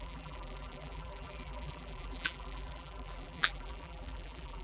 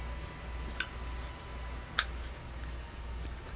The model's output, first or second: first